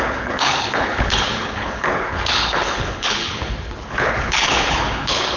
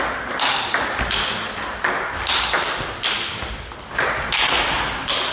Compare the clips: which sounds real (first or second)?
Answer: second